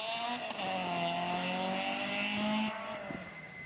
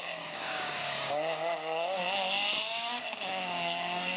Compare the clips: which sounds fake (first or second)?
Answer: second